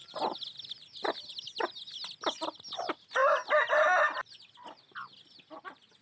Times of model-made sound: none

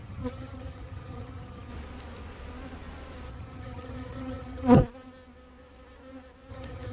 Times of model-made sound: 0.0-1.7; 3.3-4.8; 6.5-6.9

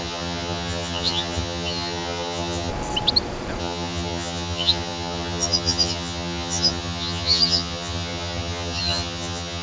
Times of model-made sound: 0.0-2.7; 3.6-9.6

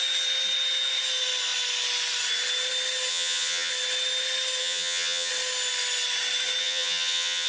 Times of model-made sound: 3.1-3.7; 4.6-5.3; 6.6-7.5

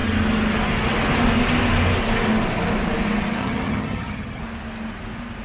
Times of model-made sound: 3.4-4.4

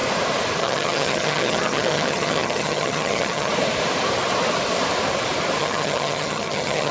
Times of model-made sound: 0.6-3.5; 5.6-6.9